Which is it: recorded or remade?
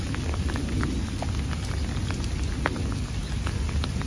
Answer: recorded